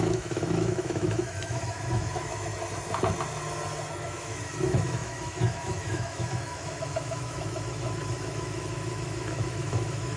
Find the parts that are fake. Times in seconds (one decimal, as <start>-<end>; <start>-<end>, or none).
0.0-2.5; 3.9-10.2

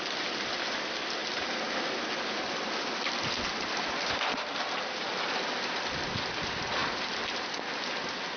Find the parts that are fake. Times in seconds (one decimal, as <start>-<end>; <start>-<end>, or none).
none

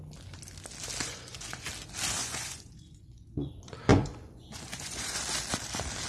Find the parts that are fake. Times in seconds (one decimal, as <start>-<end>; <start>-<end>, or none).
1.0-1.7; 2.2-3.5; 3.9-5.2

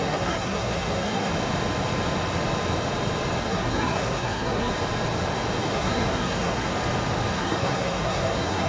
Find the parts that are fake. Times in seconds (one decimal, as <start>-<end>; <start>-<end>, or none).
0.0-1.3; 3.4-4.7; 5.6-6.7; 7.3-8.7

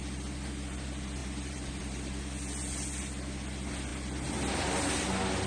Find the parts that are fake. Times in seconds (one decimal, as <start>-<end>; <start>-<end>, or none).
1.2-2.2